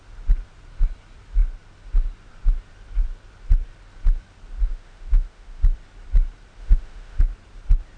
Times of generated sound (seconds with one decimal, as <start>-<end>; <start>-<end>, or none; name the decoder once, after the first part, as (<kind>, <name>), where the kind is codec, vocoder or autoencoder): 4.7-5.6 (autoencoder, DAC-VAE); 6.6-7.2